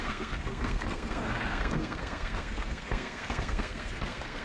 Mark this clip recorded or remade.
remade